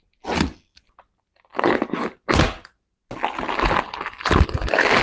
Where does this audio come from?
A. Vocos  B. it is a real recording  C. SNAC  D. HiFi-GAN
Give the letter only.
B